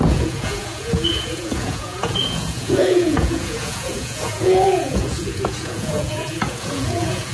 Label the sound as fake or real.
fake